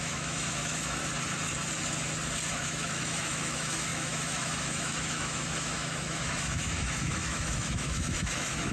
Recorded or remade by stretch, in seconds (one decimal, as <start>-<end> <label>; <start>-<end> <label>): 0.0-1.0 remade; 1.0-2.5 recorded; 2.5-8.7 remade